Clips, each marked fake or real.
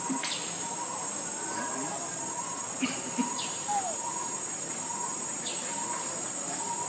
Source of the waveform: fake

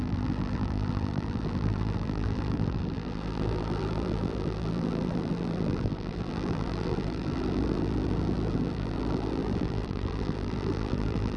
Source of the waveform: fake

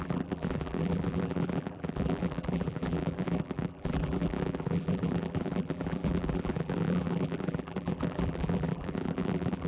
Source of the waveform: fake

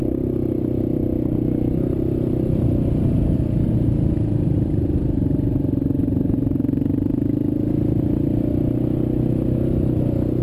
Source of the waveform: real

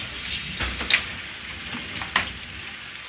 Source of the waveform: real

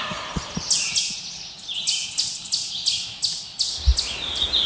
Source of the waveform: real